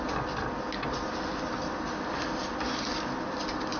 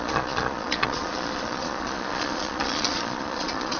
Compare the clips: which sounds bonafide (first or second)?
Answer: first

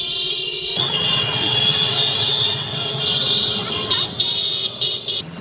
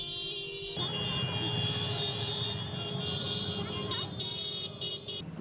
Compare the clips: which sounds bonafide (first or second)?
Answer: second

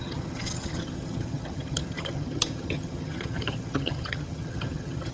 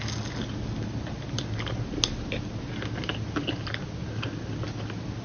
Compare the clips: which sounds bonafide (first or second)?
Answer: second